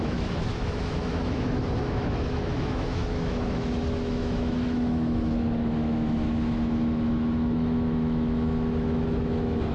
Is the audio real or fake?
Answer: fake